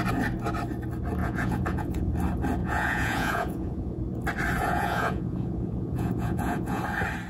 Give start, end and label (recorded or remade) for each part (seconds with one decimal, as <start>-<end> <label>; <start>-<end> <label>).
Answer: 0.0-1.2 recorded; 1.2-2.1 remade; 2.1-2.6 recorded; 2.6-4.0 remade; 4.0-4.6 recorded; 4.6-6.8 remade; 6.8-7.3 recorded